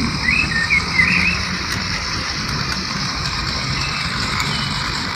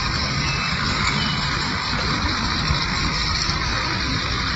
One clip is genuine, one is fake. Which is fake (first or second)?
first